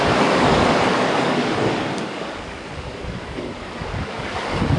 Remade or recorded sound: remade